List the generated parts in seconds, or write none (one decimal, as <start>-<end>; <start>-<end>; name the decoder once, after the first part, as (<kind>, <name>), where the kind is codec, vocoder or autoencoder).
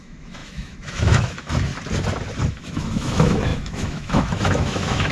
0.0-1.7 (autoencoder, DAC-VAE); 2.5-5.1